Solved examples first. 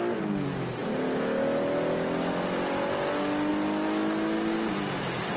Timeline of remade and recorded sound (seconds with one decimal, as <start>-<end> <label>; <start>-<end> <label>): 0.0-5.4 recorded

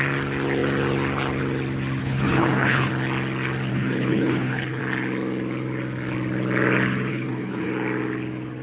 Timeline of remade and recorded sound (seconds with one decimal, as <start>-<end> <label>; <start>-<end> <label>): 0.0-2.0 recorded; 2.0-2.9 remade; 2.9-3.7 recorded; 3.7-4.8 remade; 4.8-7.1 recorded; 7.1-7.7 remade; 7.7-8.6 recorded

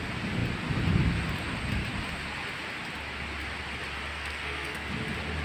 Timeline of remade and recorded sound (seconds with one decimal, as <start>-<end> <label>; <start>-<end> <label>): 0.0-4.1 recorded; 4.1-4.9 remade; 4.9-5.4 recorded

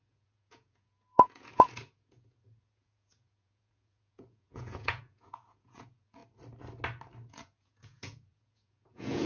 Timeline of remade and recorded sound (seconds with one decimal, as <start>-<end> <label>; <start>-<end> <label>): 0.0-6.2 remade; 6.2-7.3 recorded; 7.3-9.3 remade

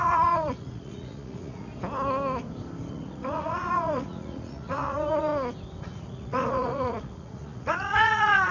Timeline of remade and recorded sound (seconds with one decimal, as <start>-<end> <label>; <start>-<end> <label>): 0.0-1.7 remade; 1.7-2.9 recorded; 2.9-5.3 remade; 5.3-5.8 recorded; 5.8-8.5 remade

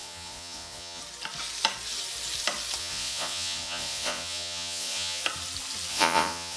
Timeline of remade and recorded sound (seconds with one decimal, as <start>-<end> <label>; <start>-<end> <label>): 0.0-1.0 remade; 1.0-2.8 recorded; 2.8-5.2 remade; 5.2-5.9 recorded; 5.9-6.6 remade